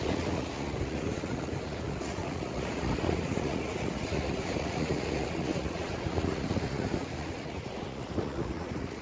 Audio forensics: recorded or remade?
remade